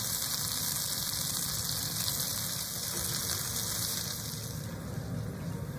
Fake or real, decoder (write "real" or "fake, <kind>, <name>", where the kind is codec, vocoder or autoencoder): real